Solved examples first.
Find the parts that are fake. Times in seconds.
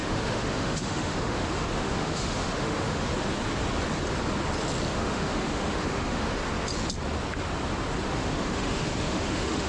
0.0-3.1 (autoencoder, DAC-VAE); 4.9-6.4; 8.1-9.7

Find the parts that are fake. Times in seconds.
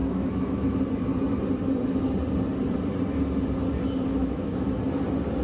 0.0-0.8 (autoencoder, DAC-VAE); 4.1-4.7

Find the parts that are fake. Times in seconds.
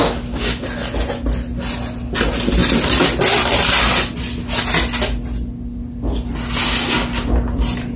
none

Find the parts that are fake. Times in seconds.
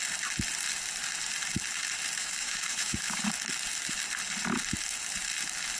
2.2-3.2 (autoencoder, DAC-VAE)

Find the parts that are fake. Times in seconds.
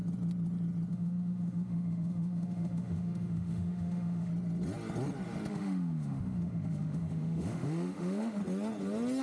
0.9-4.3 (autoencoder, DAC-VAE); 5.5-8.4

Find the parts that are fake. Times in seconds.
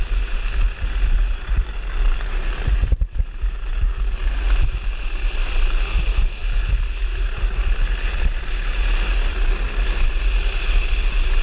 none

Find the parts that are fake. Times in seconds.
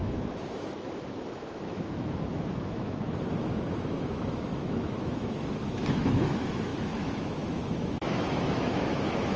0.0-9.4 (autoencoder, DAC-VAE)